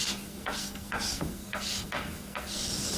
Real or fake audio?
fake